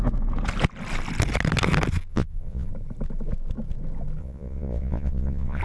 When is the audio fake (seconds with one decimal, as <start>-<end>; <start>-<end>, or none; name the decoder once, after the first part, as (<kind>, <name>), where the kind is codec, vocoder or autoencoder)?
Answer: 2.1-2.7 (vocoder, Vocos); 4.2-5.6